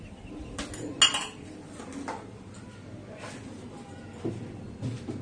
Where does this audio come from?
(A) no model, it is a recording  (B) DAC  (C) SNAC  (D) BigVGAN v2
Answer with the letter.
A